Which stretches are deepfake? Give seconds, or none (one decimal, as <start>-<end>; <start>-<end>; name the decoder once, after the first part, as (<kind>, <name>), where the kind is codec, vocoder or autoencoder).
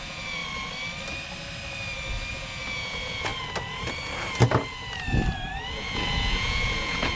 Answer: 0.0-0.4 (vocoder, Vocos); 2.3-3.3; 5.8-7.2